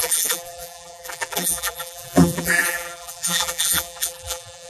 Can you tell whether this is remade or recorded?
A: remade